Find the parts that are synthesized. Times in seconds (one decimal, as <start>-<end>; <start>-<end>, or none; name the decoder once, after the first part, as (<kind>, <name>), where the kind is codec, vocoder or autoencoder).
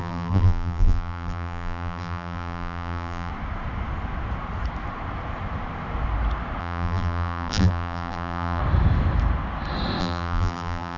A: 0.0-3.3 (vocoder, BigVGAN v2); 6.6-8.6; 10.0-11.0